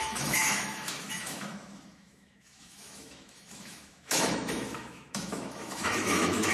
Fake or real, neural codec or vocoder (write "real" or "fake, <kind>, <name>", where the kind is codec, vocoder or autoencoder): fake, autoencoder, DAC-VAE